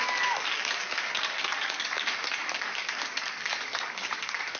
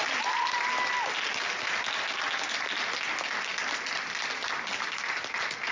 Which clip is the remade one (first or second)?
first